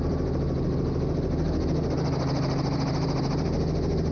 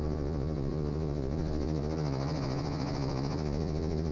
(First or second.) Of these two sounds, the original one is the first